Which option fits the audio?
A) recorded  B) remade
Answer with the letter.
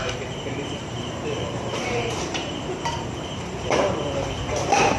B